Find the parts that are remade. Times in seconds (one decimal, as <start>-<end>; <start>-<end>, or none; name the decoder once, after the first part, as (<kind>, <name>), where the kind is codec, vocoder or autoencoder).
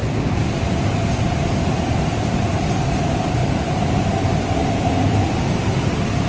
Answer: 0.0-2.5 (vocoder, BigVGAN v2)